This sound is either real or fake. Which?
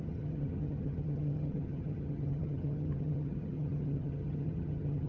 fake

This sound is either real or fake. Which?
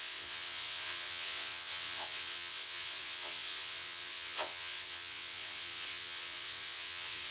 fake